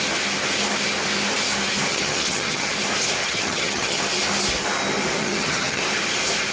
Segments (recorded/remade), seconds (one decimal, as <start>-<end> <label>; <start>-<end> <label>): 0.0-1.9 recorded; 1.9-2.7 remade; 2.7-3.2 recorded; 3.2-4.0 remade; 4.0-5.2 recorded; 5.2-5.8 remade; 5.8-6.5 recorded